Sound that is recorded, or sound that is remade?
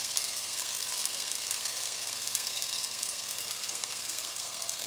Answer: remade